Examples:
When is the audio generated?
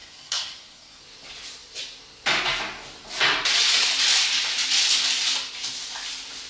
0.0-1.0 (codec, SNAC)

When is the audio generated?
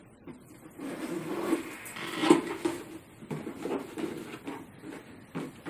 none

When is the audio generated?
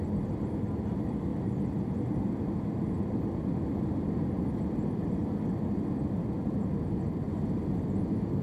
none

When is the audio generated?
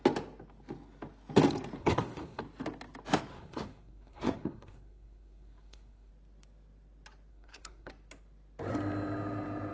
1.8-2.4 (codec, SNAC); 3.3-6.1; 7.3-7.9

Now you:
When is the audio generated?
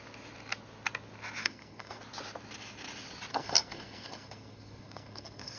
1.4-2.0 (codec, SNAC); 3.3-5.6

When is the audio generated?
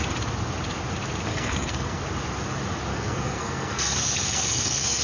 1.3-2.0 (codec, SNAC); 2.9-5.0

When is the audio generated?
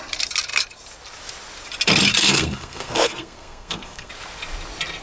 2.2-4.1 (codec, SNAC)